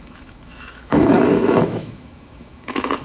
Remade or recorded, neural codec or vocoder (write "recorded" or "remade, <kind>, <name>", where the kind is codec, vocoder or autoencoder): remade, autoencoder, DAC-VAE